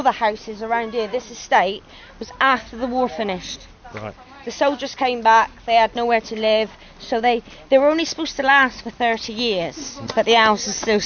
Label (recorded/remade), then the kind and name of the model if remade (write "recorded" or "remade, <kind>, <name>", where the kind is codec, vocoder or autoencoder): recorded